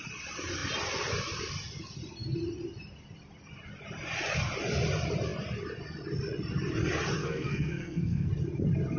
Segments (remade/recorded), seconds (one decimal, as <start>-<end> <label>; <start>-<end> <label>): 0.0-7.2 recorded; 7.2-8.3 remade; 8.3-9.0 recorded

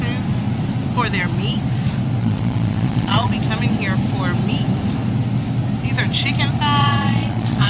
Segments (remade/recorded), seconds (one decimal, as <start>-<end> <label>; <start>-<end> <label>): 0.0-2.2 recorded; 2.2-3.3 remade; 3.3-6.8 recorded; 6.8-7.7 remade

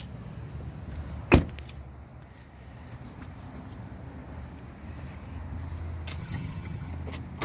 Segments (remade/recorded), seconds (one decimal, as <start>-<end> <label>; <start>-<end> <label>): 0.0-6.2 recorded; 6.2-6.9 remade; 6.9-7.4 recorded

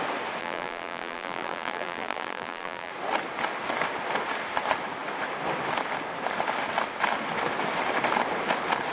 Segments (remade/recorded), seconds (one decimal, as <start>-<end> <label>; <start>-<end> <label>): 0.0-0.4 recorded; 0.4-2.9 remade; 2.9-8.9 recorded

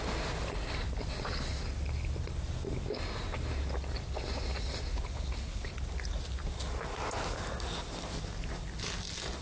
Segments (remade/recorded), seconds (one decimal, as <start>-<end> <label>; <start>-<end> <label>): 0.0-4.9 recorded; 4.9-5.7 remade; 5.7-9.4 recorded

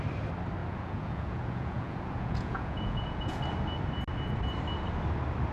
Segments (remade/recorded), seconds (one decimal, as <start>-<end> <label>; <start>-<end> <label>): 0.0-0.6 recorded; 0.6-3.4 remade; 3.4-5.5 recorded

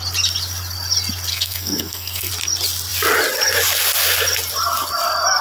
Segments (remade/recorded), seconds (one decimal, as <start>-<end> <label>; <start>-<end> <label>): 0.0-1.3 recorded; 1.3-2.3 remade; 2.3-5.4 recorded

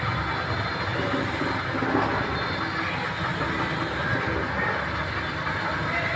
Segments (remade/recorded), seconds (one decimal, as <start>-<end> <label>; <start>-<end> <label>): 0.0-6.2 recorded